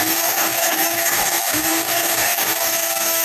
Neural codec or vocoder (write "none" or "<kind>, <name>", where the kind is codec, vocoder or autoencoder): codec, DAC